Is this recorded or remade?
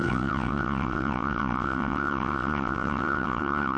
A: remade